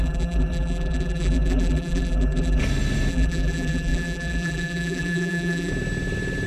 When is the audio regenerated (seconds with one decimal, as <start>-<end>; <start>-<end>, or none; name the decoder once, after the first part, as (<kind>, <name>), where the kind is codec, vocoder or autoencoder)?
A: 0.0-2.6 (vocoder, BigVGAN v2); 3.1-5.7